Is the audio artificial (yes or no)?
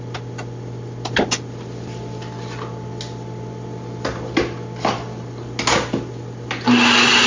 no